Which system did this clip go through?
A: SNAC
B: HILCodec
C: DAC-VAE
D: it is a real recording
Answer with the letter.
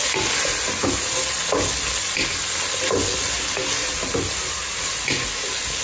D